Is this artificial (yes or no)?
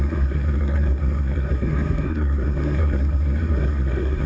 yes